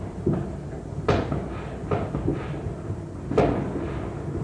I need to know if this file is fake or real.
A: real